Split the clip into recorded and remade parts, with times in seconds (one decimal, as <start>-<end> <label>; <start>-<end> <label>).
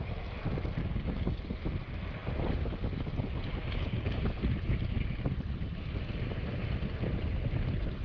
0.0-0.8 recorded; 0.8-1.4 remade; 1.4-3.6 recorded; 3.6-4.2 remade; 4.2-8.0 recorded